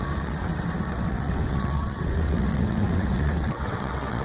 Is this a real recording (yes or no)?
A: no